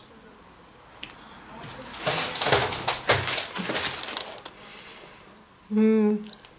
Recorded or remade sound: recorded